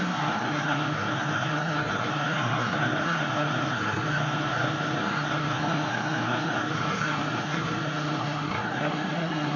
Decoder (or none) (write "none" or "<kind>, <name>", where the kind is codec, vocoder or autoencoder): codec, SNAC